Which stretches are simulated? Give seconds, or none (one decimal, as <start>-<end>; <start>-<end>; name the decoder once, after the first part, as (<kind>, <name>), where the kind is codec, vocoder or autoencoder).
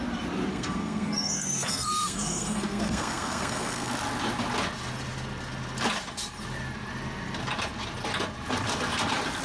0.5-3.9 (codec, SNAC)